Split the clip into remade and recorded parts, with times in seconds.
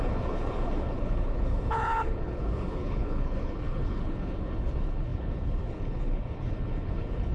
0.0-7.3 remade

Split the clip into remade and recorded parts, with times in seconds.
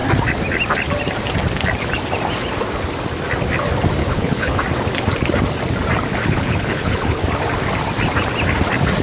0.0-4.0 recorded; 4.0-4.6 remade; 4.6-6.2 recorded; 6.2-7.2 remade; 7.2-9.0 recorded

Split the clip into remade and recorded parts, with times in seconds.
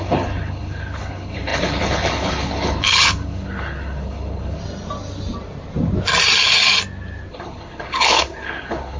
0.0-4.6 remade; 4.6-7.3 recorded; 7.3-9.0 remade